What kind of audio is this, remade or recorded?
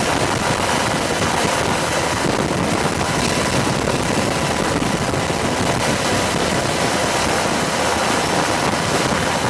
recorded